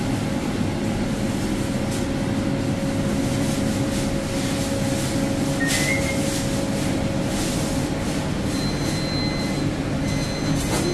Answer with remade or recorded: recorded